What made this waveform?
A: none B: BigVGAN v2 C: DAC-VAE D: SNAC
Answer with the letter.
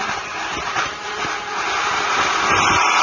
B